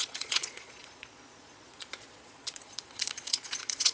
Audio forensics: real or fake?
fake